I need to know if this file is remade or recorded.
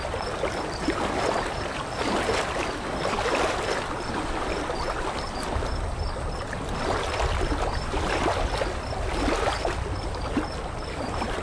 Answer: recorded